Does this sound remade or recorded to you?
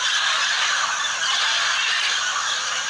recorded